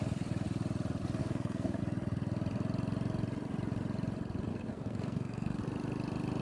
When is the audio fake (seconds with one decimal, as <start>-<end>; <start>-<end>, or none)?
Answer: 1.2-1.8; 4.5-5.6